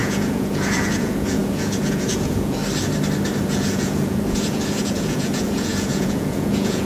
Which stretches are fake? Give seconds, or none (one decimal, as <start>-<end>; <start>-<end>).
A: 0.0-2.6; 3.4-6.9